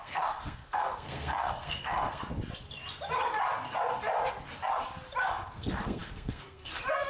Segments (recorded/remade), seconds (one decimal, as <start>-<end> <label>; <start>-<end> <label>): 0.0-2.2 remade; 2.2-5.3 recorded; 5.3-7.1 remade